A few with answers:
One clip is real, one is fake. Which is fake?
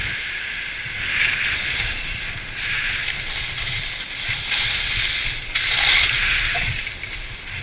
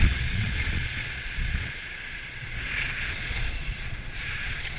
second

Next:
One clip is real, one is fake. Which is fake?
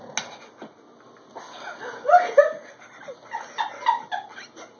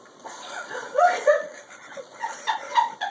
second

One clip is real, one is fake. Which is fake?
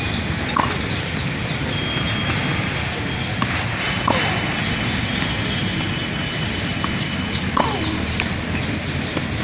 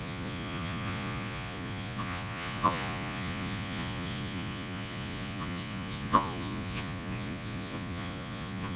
second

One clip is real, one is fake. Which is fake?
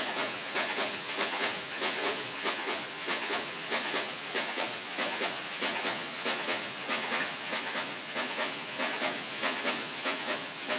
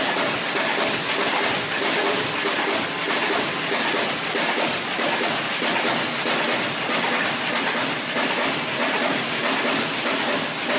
first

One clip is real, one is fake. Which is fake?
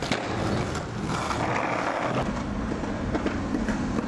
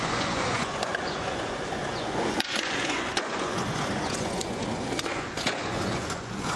second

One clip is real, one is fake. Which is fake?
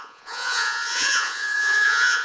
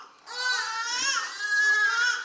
first